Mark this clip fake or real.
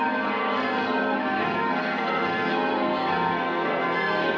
fake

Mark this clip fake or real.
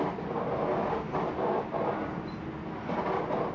real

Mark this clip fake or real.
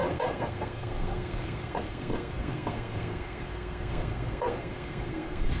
fake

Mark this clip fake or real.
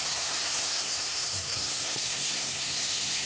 fake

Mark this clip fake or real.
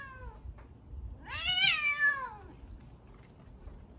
real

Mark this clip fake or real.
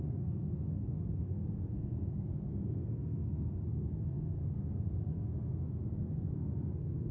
fake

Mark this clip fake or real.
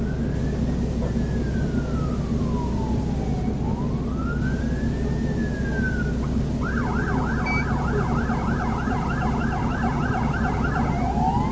real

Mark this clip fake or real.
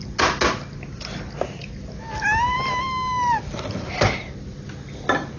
real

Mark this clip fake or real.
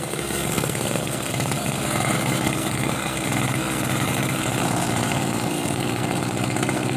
fake